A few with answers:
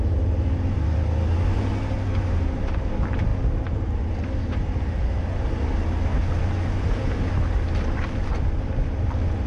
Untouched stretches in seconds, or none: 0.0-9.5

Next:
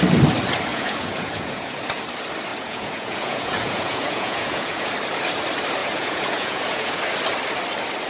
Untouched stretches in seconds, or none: 0.0-0.7; 1.8-2.5; 4.9-5.8; 7.0-8.1

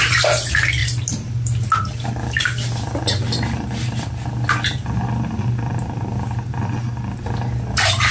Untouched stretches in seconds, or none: 0.0-0.8; 5.7-8.1

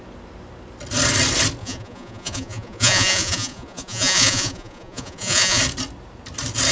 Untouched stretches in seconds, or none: 0.0-1.6; 5.6-6.7

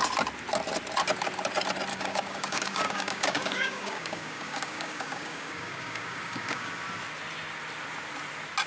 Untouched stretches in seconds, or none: 0.0-1.9; 6.7-8.7

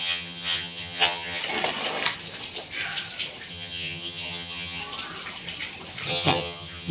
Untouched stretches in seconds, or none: 1.4-3.5; 4.8-6.1

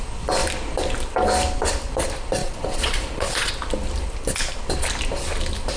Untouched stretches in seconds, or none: 0.0-2.4; 3.5-5.8

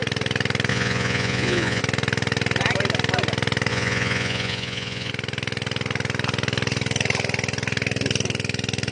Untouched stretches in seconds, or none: 0.0-0.7; 1.8-3.7; 5.1-8.9